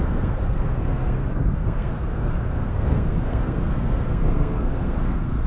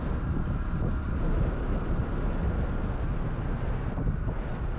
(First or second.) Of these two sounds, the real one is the second